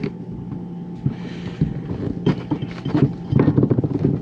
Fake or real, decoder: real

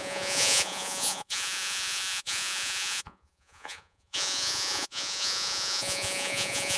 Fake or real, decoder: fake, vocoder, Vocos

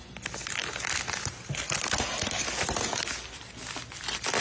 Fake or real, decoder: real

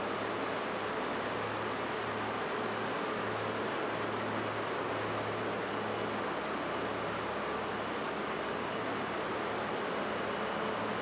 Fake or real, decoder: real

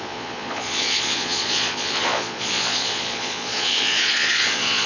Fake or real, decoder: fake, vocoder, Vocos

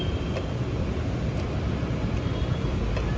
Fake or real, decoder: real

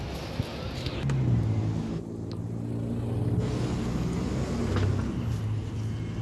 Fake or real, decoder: real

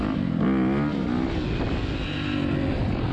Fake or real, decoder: real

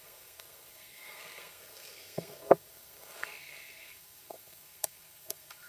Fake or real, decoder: fake, codec, SNAC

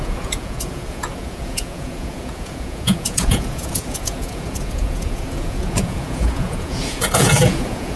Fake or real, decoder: fake, vocoder, Vocos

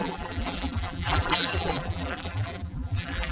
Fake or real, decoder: fake, vocoder, BigVGAN v2